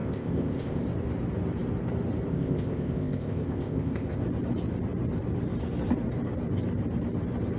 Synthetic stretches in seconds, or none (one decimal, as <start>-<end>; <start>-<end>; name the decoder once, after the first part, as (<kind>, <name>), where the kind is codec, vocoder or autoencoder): 0.0-0.8 (codec, ZipCodec); 2.3-4.2